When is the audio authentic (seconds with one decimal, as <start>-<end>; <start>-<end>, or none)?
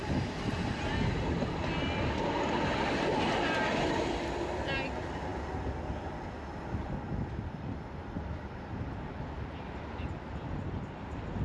0.0-11.4